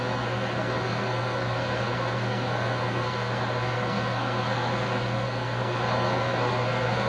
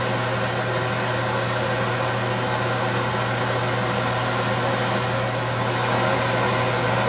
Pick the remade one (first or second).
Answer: first